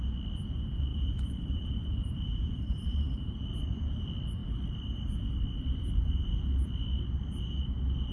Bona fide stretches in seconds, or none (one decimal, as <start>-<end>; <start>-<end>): 0.0-0.9; 3.5-8.1